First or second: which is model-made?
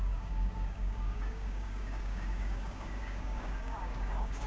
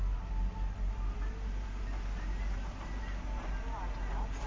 first